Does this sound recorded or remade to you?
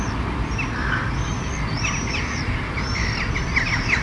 recorded